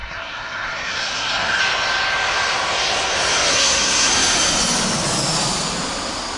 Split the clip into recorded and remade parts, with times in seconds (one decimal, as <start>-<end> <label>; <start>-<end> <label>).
0.0-1.6 remade; 1.6-3.5 recorded; 3.5-4.1 remade; 4.1-6.4 recorded